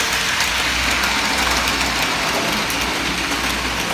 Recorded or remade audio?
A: recorded